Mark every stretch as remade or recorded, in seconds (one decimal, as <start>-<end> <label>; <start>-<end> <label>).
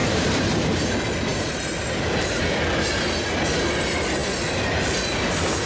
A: 0.0-0.9 remade; 0.9-1.3 recorded; 1.3-2.4 remade; 2.4-5.7 recorded